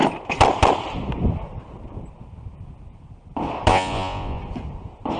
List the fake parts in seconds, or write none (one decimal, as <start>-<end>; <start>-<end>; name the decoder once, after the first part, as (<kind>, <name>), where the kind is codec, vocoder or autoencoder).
3.7-4.4 (vocoder, Vocos)